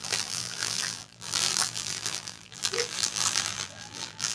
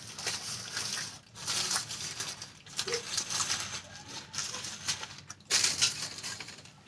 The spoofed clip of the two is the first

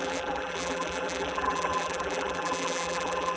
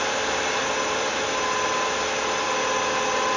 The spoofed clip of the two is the first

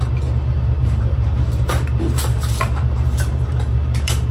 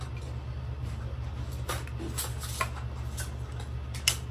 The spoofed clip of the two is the first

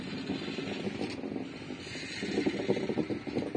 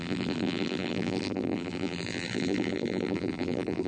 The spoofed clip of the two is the second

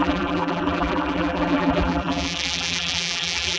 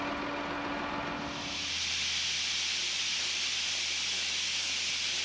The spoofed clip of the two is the first